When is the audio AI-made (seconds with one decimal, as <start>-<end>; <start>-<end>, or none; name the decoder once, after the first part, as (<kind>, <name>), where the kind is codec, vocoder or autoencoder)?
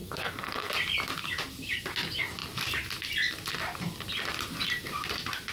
0.0-0.7 (codec, SNAC)